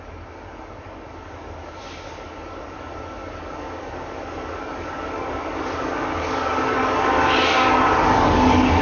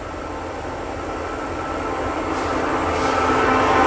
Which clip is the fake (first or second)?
first